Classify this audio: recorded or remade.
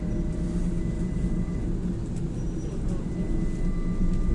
recorded